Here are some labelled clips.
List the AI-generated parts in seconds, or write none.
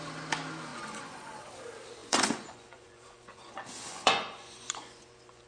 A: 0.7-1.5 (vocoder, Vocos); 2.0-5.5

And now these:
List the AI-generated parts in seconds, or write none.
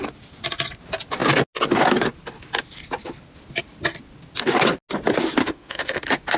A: 5.4-6.0 (autoencoder, DAC-VAE)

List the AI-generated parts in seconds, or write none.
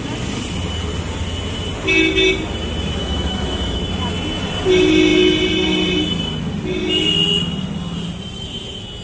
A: 3.0-3.8 (autoencoder, DAC-VAE)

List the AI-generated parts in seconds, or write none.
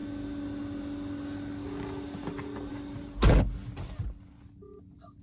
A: none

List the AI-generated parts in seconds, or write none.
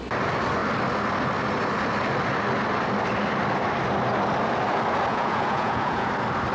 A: 5.1-6.1 (vocoder, Vocos)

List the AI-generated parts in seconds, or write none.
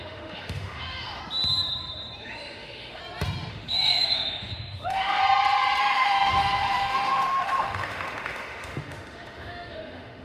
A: 0.0-1.2 (autoencoder, DAC-VAE); 2.2-3.0; 3.5-5.2; 5.8-10.2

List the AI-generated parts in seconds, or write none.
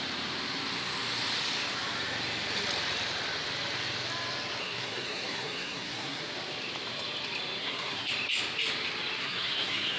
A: 4.6-6.2 (codec, SNAC); 7.6-8.1; 9.2-10.0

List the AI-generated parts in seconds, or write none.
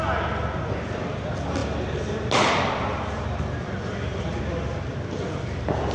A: none